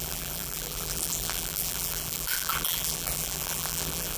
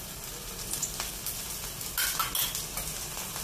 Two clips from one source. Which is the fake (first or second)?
first